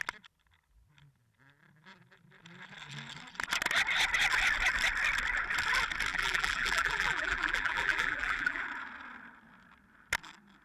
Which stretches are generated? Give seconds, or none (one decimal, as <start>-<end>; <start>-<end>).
6.1-8.6